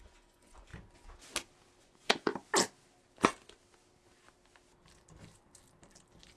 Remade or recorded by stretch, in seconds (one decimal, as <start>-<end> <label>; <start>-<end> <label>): 0.0-0.7 remade; 0.7-1.8 recorded; 1.8-2.3 remade; 2.3-6.4 recorded